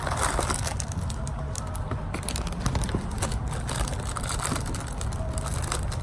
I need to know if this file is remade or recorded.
recorded